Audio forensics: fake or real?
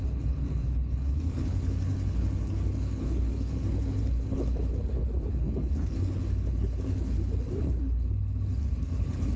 fake